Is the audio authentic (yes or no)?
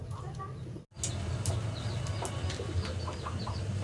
yes